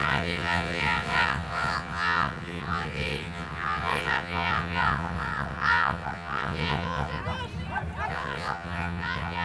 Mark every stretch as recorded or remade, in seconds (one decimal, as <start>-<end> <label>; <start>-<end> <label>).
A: 0.0-7.2 remade; 7.2-8.1 recorded; 8.1-9.4 remade